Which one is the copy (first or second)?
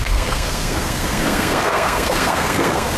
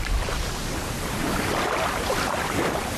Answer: first